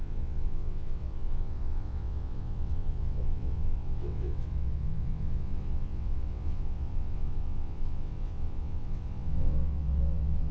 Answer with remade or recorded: remade